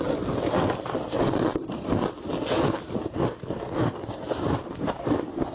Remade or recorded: recorded